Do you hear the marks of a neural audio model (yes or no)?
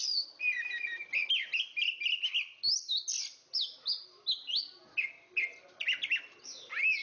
no